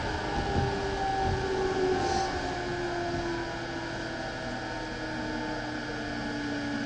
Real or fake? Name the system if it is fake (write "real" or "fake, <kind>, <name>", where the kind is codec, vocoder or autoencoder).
real